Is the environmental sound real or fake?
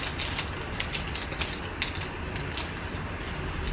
real